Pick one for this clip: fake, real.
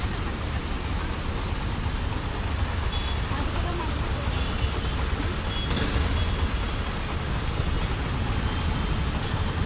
real